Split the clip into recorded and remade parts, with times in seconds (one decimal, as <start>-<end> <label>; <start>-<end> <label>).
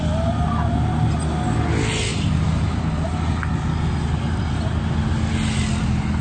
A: 0.0-6.2 recorded